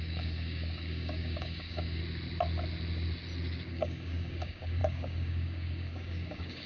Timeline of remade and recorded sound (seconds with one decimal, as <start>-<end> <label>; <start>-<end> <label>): 0.0-2.0 remade; 2.0-3.7 recorded; 3.7-6.7 remade